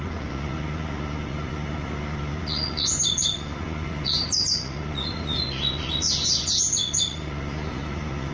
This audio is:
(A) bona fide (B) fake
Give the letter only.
B